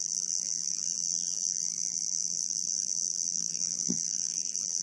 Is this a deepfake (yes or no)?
yes